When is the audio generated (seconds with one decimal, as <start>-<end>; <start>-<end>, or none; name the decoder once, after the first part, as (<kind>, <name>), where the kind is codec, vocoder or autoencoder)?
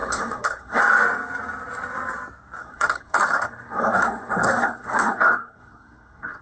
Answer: 0.0-0.8 (codec, SNAC); 2.6-6.4